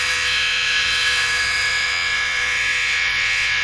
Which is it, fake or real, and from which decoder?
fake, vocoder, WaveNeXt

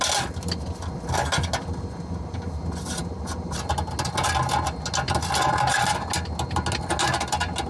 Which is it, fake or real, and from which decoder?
real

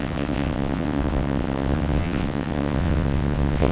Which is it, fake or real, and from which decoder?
fake, vocoder, WaveNeXt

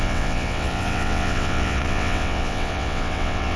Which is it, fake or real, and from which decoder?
fake, vocoder, WaveNeXt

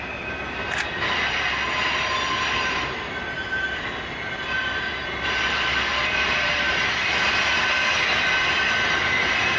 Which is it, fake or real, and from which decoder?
real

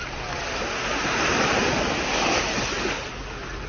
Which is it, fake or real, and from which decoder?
real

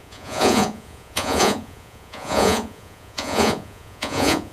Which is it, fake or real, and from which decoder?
fake, vocoder, Vocos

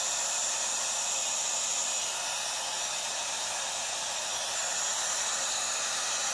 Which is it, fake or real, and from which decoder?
real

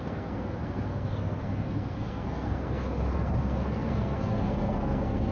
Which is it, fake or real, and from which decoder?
fake, codec, SNAC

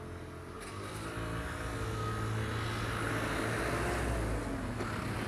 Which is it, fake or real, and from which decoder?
real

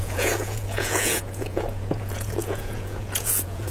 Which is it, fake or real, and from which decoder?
fake, vocoder, Vocos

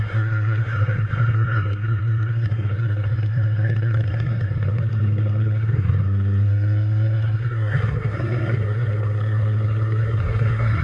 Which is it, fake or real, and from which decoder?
fake, codec, SNAC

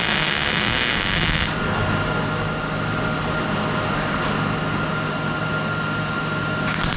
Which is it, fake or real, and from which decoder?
real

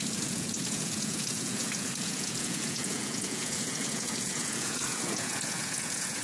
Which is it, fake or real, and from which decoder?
fake, vocoder, Vocos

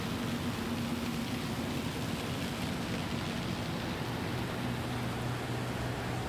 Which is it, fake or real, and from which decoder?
real